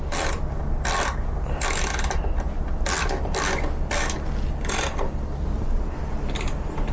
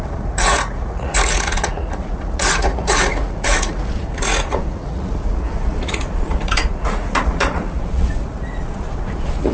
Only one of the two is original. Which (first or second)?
first